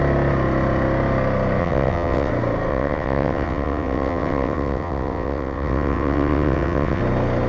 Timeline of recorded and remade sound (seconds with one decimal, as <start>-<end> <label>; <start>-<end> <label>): 0.0-1.6 recorded; 1.6-2.3 remade; 2.3-2.7 recorded; 2.7-7.0 remade; 7.0-7.5 recorded